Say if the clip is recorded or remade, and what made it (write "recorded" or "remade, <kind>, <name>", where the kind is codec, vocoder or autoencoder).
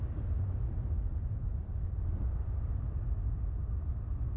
remade, vocoder, BigVGAN v2